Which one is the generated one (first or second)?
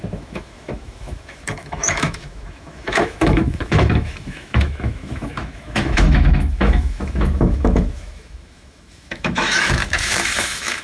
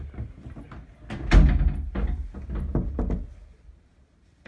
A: first